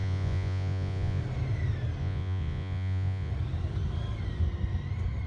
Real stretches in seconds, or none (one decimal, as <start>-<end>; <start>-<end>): 1.2-2.0; 3.3-5.3